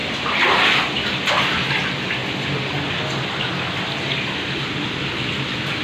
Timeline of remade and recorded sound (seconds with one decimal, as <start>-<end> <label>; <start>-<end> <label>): 0.0-5.8 recorded